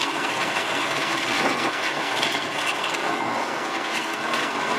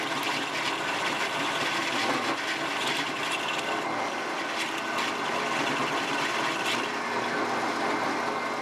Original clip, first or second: second